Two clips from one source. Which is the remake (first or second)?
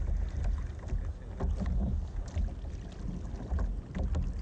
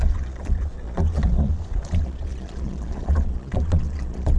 second